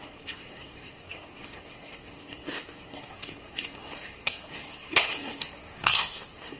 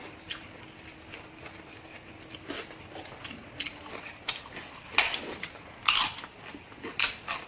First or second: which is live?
second